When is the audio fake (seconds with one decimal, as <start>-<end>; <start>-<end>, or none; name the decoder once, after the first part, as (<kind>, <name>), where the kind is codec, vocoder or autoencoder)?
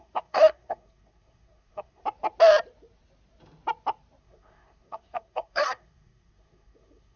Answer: 0.0-2.0 (codec, SNAC); 4.2-7.2